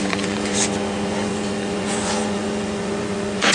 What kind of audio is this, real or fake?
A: fake